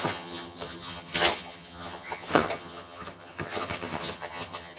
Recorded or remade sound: remade